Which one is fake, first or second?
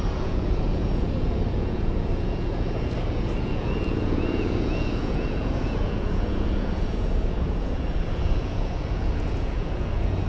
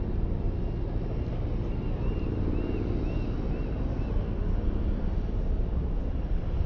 first